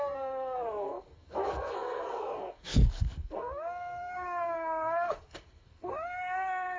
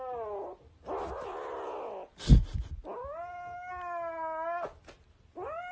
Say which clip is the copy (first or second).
first